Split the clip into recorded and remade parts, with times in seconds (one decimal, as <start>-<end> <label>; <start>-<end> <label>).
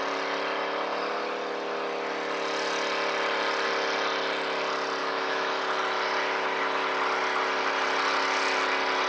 0.0-5.0 recorded; 5.0-5.6 remade; 5.6-9.1 recorded